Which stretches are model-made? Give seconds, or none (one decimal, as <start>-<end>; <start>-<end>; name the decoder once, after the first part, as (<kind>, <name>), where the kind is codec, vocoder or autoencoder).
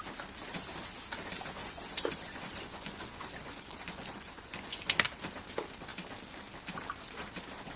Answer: 1.6-4.8 (vocoder, Vocos)